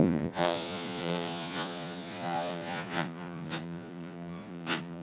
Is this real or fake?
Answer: fake